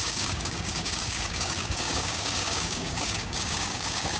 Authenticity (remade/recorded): remade